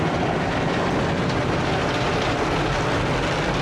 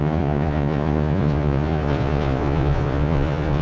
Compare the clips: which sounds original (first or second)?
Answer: first